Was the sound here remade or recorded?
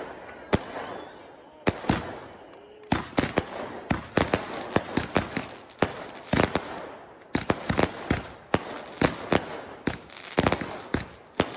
recorded